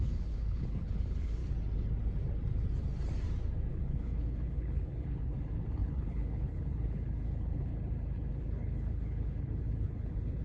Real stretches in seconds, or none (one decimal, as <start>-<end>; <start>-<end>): 1.4-3.7; 7.7-8.3